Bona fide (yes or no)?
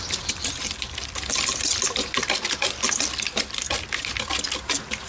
yes